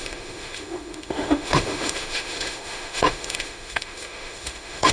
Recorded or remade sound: remade